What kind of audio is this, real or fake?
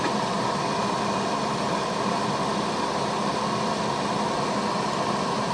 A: real